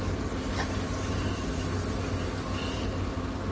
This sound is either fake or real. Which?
real